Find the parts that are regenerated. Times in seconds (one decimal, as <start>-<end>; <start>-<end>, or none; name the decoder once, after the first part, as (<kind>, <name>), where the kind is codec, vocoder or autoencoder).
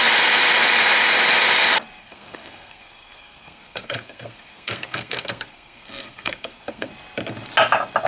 2.0-6.9 (codec, SNAC)